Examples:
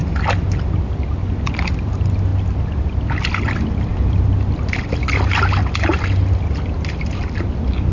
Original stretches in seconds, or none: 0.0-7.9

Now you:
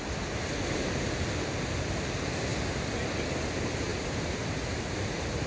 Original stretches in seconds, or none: 0.0-3.9; 4.5-5.5

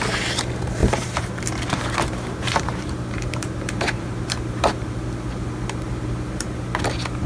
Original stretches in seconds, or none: 0.0-0.8; 4.9-7.3